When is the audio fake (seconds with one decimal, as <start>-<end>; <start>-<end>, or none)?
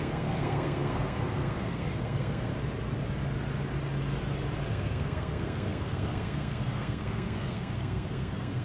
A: 0.0-2.5; 4.7-8.6